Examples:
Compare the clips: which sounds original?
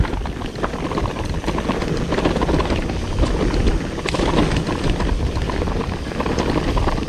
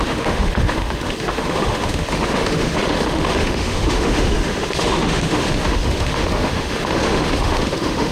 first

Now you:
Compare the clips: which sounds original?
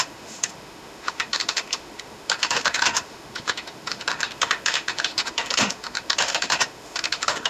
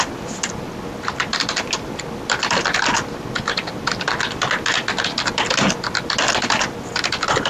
second